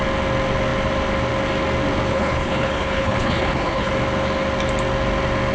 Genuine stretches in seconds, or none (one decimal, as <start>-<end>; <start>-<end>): 0.0-2.1; 3.9-5.5